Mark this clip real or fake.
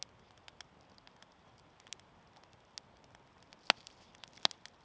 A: real